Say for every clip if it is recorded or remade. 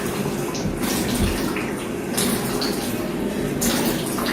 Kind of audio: recorded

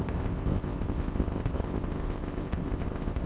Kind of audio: remade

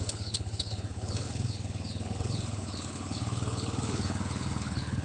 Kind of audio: remade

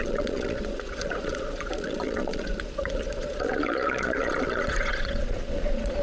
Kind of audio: remade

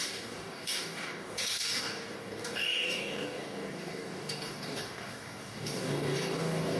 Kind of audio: remade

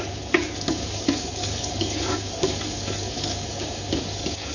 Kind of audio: remade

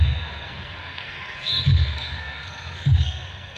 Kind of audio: remade